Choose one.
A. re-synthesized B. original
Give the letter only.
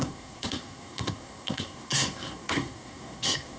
A